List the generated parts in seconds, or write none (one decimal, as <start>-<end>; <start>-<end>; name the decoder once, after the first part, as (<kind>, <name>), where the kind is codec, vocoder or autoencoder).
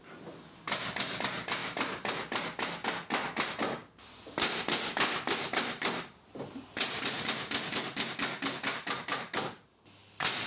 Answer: none